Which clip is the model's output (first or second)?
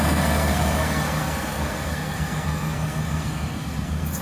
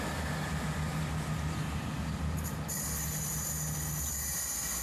first